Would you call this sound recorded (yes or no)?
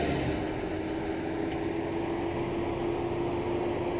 yes